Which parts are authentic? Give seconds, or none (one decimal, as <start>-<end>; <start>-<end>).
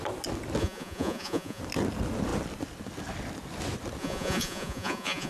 0.0-0.6; 1.6-4.0